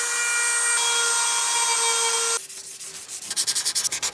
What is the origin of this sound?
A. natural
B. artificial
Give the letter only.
A